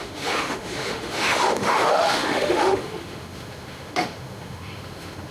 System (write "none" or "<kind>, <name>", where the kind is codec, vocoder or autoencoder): autoencoder, DAC-VAE